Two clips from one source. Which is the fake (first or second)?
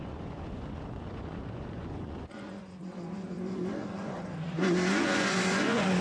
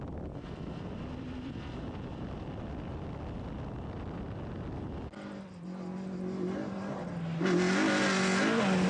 first